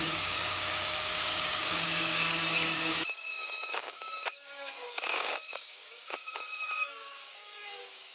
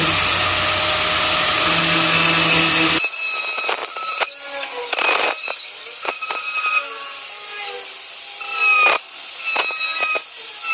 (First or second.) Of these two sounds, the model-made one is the first